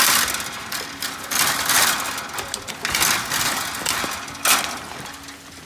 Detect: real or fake real